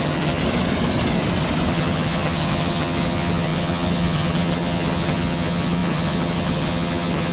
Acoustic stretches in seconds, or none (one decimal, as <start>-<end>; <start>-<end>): 0.4-1.7